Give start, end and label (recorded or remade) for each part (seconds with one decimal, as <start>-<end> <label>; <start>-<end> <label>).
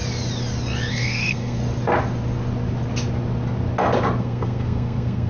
0.0-0.9 recorded; 0.9-1.6 remade; 1.6-4.2 recorded; 4.2-5.3 remade